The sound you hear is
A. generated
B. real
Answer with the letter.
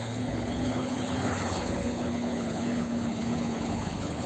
A